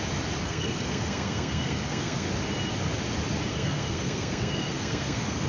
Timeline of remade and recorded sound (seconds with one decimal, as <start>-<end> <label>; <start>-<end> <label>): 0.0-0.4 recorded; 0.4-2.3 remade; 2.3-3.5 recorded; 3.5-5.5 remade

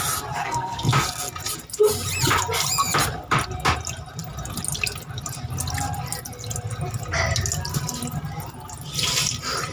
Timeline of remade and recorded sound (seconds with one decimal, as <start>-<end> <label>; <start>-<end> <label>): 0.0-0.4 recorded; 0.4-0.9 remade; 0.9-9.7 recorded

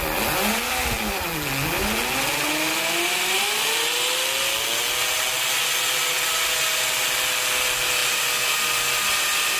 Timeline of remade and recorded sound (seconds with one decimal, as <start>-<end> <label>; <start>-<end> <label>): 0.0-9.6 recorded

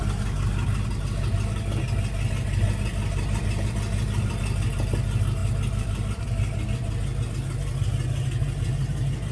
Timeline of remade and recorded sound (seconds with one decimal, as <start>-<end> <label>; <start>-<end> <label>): 0.0-9.3 recorded

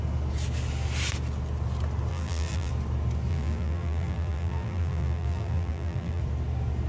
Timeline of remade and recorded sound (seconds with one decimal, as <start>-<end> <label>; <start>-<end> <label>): 0.0-2.1 recorded; 2.1-2.7 remade; 2.7-3.3 recorded; 3.3-6.2 remade; 6.2-6.9 recorded

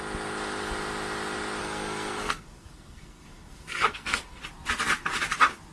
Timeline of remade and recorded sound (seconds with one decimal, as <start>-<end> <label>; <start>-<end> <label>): 0.0-1.6 recorded; 1.6-4.4 remade; 4.4-5.7 recorded